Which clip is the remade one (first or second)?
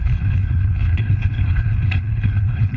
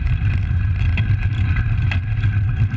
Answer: first